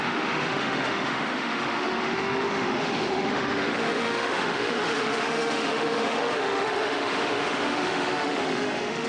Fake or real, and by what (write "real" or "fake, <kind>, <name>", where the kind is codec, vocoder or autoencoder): fake, autoencoder, DAC-VAE